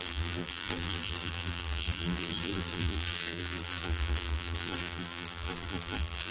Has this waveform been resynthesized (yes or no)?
yes